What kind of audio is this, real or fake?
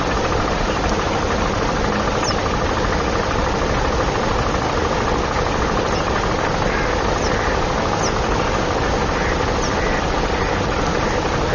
real